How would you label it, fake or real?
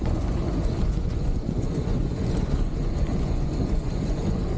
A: fake